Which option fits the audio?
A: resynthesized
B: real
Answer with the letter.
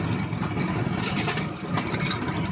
B